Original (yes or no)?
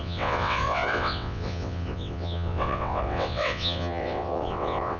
no